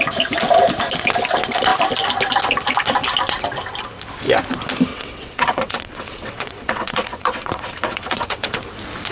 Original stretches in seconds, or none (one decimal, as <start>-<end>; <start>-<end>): 0.0-4.9; 8.6-9.1